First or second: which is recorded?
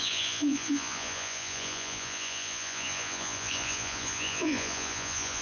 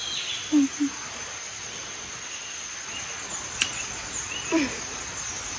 second